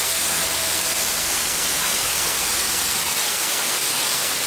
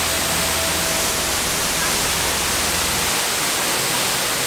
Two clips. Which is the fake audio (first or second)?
first